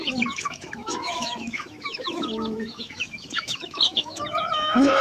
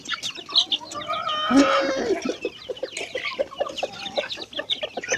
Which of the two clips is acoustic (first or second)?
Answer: second